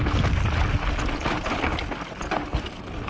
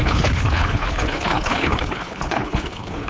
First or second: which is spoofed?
second